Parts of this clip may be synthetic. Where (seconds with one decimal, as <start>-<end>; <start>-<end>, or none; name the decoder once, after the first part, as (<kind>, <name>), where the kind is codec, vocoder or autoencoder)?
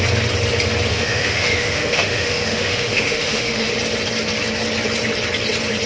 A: 0.9-3.7 (autoencoder, DAC-VAE)